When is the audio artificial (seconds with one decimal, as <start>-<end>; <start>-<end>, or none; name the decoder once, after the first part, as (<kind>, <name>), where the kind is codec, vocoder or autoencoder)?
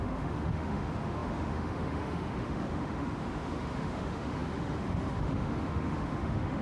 0.0-6.6 (autoencoder, DAC-VAE)